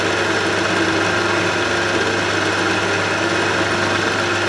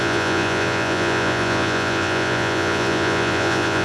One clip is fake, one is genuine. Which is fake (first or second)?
second